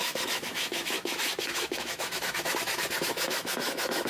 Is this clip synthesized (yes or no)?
yes